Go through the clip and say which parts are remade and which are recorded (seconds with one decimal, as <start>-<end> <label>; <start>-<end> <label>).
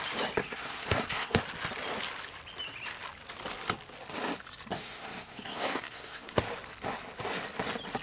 0.0-0.4 recorded; 0.4-1.4 remade; 1.4-4.7 recorded; 4.7-6.4 remade; 6.4-8.0 recorded